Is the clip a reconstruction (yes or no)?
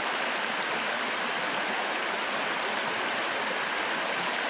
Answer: no